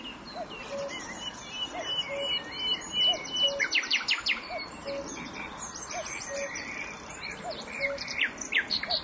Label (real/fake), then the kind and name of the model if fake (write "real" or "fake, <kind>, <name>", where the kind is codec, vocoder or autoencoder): real